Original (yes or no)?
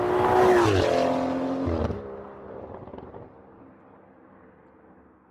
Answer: yes